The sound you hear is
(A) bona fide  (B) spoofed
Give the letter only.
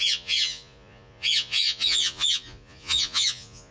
B